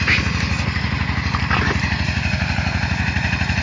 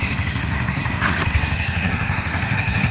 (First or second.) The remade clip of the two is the second